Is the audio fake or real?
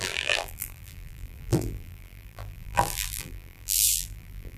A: fake